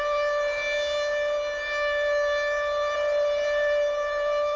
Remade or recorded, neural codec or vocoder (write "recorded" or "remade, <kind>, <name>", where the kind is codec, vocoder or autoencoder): recorded